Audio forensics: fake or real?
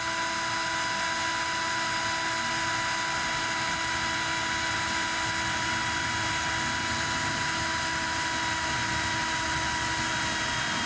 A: real